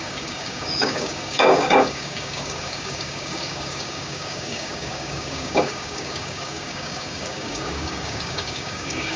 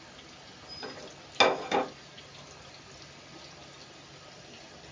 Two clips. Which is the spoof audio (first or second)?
first